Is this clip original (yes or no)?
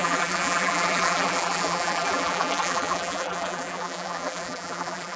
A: no